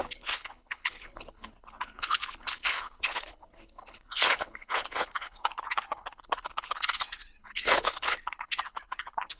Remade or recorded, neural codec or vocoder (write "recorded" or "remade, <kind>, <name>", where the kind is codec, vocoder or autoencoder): remade, codec, HILCodec